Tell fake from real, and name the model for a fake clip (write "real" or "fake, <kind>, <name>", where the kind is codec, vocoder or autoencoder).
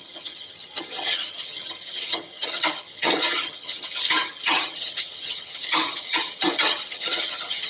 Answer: fake, vocoder, HiFi-GAN